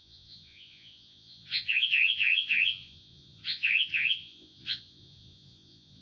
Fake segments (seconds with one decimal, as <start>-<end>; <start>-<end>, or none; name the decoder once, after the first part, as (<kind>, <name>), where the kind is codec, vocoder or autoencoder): 0.0-6.0 (vocoder, Vocos)